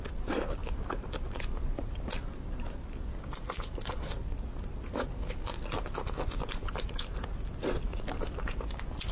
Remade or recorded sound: recorded